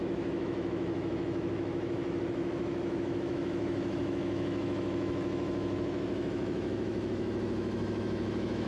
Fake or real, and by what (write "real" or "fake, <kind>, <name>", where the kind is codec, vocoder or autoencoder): fake, autoencoder, DAC-VAE